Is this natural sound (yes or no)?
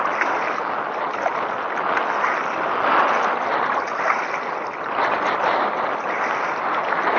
yes